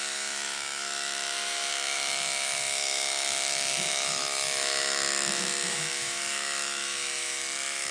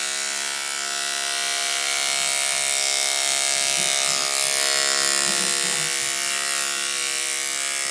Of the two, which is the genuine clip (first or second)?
second